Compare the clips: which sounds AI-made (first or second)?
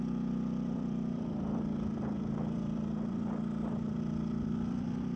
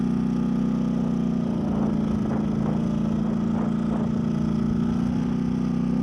first